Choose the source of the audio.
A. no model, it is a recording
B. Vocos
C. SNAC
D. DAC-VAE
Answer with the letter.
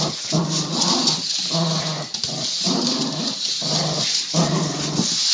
A